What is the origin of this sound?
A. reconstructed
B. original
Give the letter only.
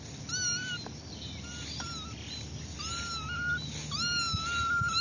B